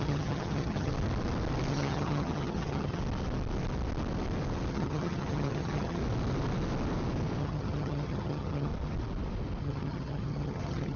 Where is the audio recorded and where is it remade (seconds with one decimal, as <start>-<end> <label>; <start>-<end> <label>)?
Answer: 0.0-0.9 remade; 0.9-1.7 recorded; 1.7-3.0 remade; 3.0-4.7 recorded; 4.7-6.0 remade; 6.0-7.4 recorded; 7.4-8.7 remade; 8.7-9.6 recorded; 9.6-11.0 remade